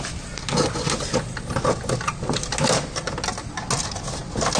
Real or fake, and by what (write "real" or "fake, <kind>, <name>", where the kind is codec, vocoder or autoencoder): real